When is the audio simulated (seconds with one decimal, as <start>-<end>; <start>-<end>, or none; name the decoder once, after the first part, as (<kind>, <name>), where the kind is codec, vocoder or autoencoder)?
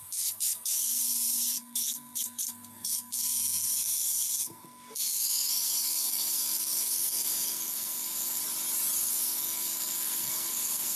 0.0-8.4 (codec, SNAC); 9.0-11.0